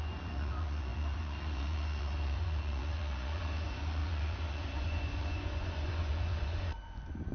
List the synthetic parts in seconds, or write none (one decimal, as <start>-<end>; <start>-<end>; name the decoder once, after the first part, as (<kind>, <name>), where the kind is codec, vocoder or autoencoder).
0.0-7.3 (vocoder, Vocos)